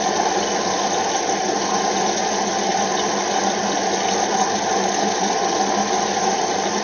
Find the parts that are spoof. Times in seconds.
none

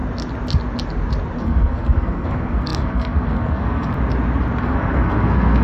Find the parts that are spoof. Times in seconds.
1.4-3.9 (codec, SNAC); 4.6-5.6

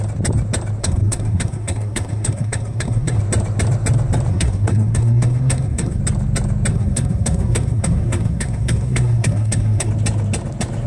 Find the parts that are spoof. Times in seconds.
0.8-3.2 (codec, SNAC); 4.3-6.0; 6.7-9.9

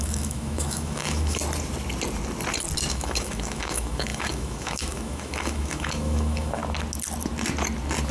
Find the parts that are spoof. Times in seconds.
0.0-1.4 (autoencoder, DAC-VAE); 2.9-6.6

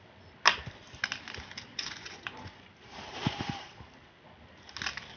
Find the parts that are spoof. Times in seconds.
1.7-2.7 (vocoder, Vocos)

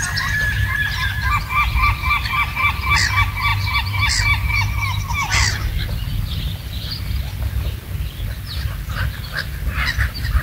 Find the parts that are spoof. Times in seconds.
none

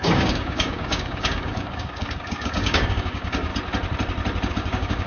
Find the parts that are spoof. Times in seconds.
0.0-3.5 (codec, DAC); 4.5-5.1

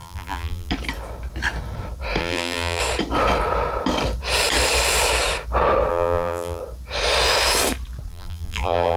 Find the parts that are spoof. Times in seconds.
0.0-0.7 (vocoder, BigVGAN v2); 2.2-2.8; 5.9-6.6; 8.1-9.0